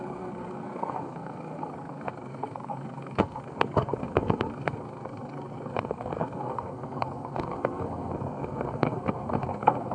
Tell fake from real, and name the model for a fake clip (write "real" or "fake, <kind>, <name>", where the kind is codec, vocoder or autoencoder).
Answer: fake, codec, SNAC